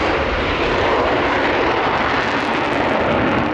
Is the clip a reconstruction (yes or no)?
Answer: no